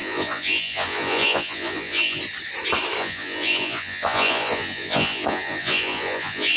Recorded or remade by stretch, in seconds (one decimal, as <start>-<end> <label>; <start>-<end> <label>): 0.0-2.2 remade; 2.2-3.0 recorded; 3.0-6.6 remade